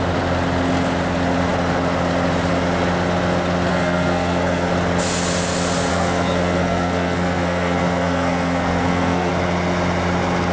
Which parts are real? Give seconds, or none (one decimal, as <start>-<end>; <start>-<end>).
0.0-3.7; 4.7-5.9; 9.3-10.5

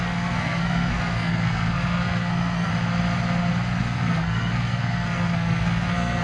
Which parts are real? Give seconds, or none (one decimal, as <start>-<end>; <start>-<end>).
2.7-3.8

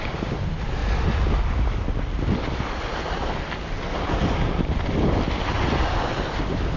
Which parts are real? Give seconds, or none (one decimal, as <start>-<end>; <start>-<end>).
0.0-6.8

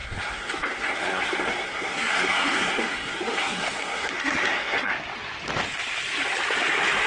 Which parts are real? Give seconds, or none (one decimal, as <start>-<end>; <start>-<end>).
4.9-7.1

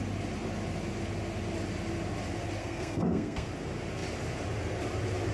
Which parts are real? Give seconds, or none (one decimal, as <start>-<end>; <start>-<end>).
0.0-2.6; 3.5-5.3